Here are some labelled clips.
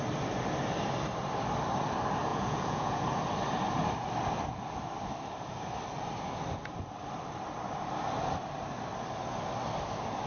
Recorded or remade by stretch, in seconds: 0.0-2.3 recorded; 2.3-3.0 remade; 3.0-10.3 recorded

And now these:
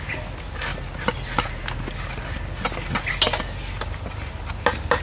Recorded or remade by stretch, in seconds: 0.0-5.0 recorded

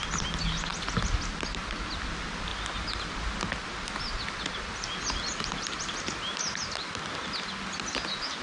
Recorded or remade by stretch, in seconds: 0.0-8.4 recorded

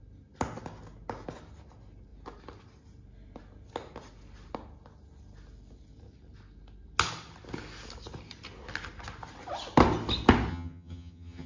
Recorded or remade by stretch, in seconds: 0.0-10.5 recorded; 10.5-11.5 remade

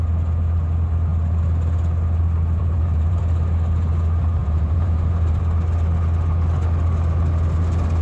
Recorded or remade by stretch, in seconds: 0.0-2.6 recorded; 2.6-3.2 remade; 3.2-4.4 recorded; 4.4-5.4 remade; 5.4-8.0 recorded

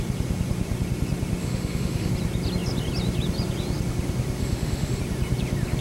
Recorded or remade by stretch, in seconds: 0.0-1.4 recorded; 1.4-2.1 remade; 2.1-4.4 recorded; 4.4-5.0 remade; 5.0-5.8 recorded

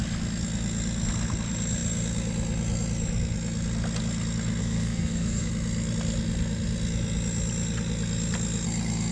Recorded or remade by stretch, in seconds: 0.0-4.6 recorded; 4.6-5.5 remade; 5.5-9.1 recorded